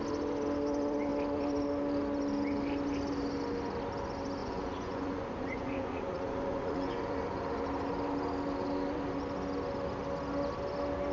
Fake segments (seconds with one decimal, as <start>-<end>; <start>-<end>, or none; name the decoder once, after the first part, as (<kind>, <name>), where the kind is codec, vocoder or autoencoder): 4.4-7.4 (vocoder, Vocos)